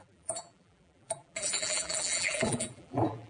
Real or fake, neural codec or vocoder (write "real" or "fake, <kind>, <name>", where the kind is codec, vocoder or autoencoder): fake, vocoder, BigVGAN v2